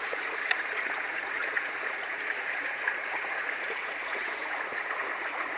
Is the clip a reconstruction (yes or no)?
yes